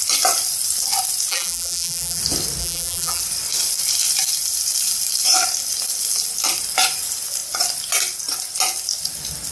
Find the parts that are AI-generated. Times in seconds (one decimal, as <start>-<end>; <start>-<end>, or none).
1.3-2.2; 2.6-3.2

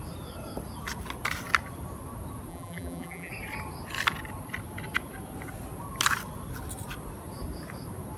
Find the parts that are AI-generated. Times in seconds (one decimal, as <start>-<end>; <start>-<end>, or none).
2.5-3.3

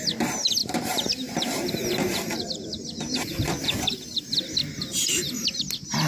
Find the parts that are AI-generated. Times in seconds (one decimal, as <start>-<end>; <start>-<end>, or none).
0.6-4.3; 4.9-5.6

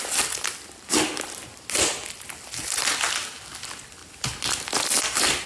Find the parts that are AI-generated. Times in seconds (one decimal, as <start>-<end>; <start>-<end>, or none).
4.0-5.0

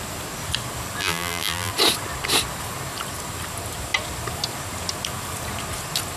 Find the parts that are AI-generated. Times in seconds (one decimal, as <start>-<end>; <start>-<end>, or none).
1.0-1.7